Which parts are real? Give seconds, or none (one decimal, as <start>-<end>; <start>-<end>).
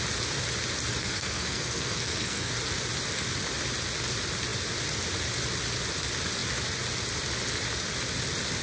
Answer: 0.0-1.0; 2.5-8.6